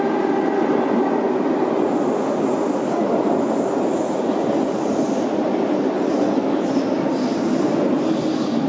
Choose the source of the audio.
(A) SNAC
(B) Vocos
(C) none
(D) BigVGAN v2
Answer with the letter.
C